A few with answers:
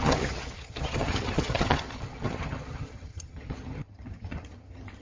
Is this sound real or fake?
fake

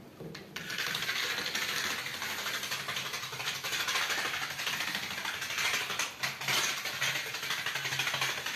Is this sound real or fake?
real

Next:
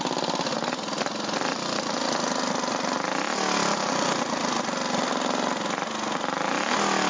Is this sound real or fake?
real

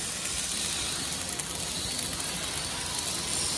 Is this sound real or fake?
real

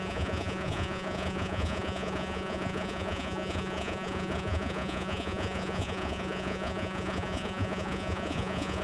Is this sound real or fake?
fake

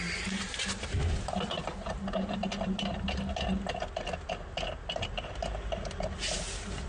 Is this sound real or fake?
real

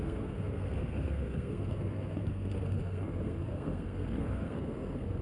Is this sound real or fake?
fake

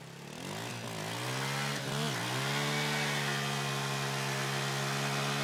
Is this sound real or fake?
real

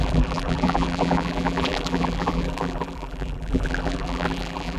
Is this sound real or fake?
fake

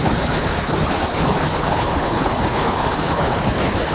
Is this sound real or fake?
fake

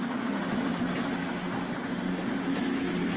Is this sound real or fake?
real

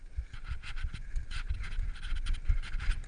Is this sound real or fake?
real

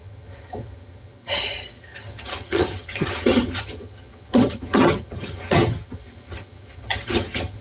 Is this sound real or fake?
fake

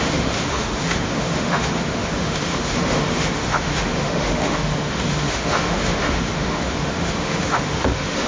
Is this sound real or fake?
fake